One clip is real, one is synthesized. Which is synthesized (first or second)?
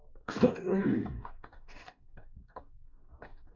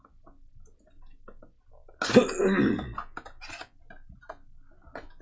first